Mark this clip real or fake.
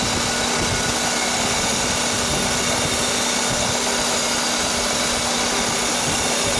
real